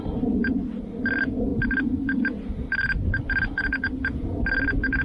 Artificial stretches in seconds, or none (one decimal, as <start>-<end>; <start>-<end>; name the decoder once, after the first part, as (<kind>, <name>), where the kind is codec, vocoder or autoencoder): none